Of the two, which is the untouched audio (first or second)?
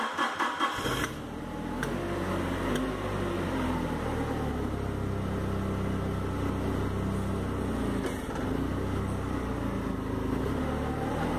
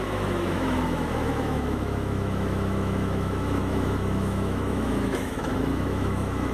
first